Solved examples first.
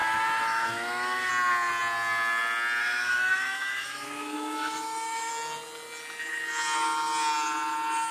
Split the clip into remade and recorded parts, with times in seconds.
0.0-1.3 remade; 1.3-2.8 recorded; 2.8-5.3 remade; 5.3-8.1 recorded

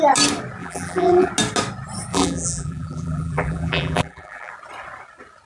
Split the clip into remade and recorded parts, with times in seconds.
0.0-0.6 recorded; 0.6-1.3 remade; 1.3-2.1 recorded; 2.1-4.5 remade; 4.5-5.5 recorded

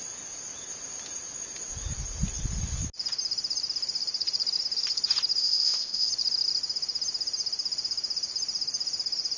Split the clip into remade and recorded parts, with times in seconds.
0.0-5.4 recorded; 5.4-6.1 remade; 6.1-9.4 recorded

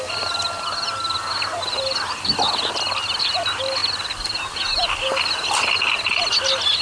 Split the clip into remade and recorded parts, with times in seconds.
0.0-6.8 recorded

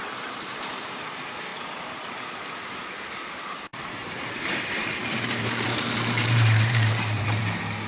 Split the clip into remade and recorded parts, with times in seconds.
0.0-3.7 recorded; 3.7-7.4 remade; 7.4-7.9 recorded

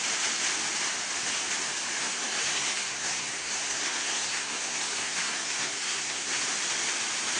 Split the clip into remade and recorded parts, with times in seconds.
0.0-2.0 recorded; 2.0-6.4 remade; 6.4-7.4 recorded